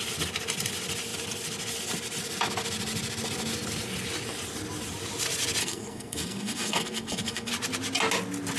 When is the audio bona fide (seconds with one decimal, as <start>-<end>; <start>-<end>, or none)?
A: 0.0-5.6; 7.5-8.6

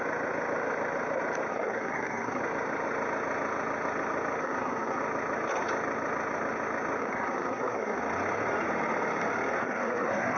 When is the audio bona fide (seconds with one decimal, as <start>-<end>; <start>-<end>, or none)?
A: 0.0-1.5; 2.4-4.4; 5.0-7.0; 8.0-9.6

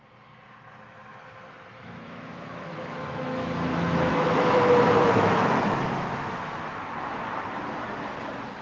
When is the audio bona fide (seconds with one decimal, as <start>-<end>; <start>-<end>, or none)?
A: 0.0-1.7; 6.7-8.6

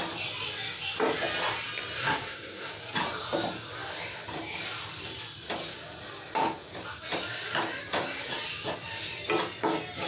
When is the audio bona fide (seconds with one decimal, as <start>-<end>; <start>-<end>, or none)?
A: 0.0-2.0; 2.7-10.1